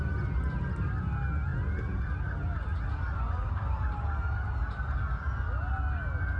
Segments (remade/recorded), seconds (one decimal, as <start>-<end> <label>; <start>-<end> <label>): 0.0-6.4 recorded